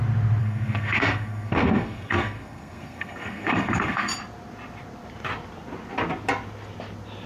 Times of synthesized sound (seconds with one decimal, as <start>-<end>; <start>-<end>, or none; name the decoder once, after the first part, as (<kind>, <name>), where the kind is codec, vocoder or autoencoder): 0.4-4.1 (codec, SNAC)